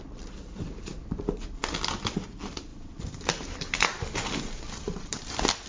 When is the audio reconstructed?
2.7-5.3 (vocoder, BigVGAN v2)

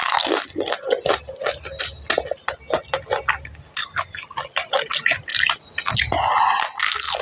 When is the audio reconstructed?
0.0-1.8 (vocoder, BigVGAN v2); 3.8-4.7; 5.3-5.9

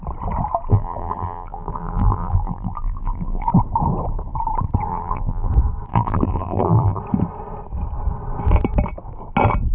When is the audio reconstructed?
0.7-3.5 (vocoder, BigVGAN v2); 4.9-5.5; 5.9-7.0